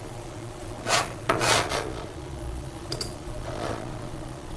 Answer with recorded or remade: remade